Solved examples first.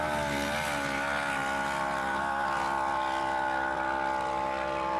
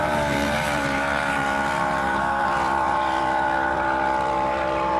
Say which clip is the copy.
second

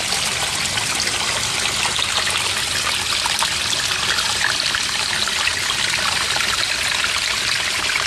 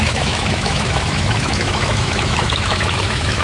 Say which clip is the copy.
second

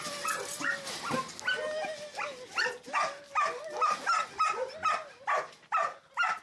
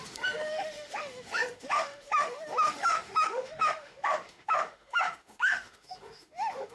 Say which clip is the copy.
second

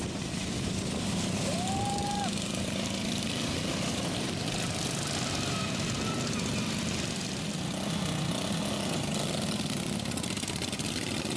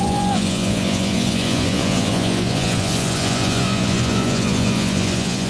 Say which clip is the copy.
second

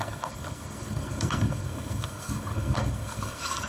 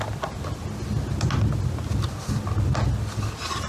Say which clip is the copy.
first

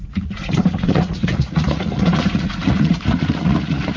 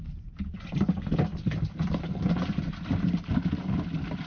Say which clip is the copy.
first